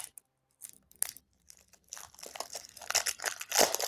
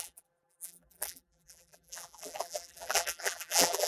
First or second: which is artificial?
second